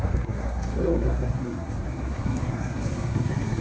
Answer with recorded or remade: remade